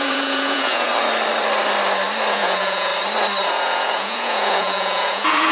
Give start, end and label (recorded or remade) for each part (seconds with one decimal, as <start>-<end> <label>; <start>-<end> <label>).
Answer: 0.0-0.9 remade; 0.9-2.3 recorded; 2.3-2.9 remade; 2.9-3.5 recorded; 3.5-5.5 remade